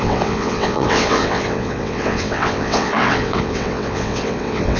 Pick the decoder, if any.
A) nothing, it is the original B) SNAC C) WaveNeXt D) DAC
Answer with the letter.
C